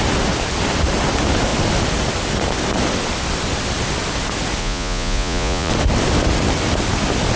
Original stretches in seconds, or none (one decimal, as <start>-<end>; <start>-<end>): 0.0-4.6; 5.7-7.4